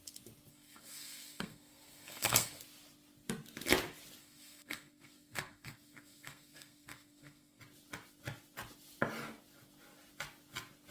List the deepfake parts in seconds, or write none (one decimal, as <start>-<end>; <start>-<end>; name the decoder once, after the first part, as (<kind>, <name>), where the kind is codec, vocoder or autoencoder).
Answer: 0.5-2.6 (codec, SNAC); 4.2-7.6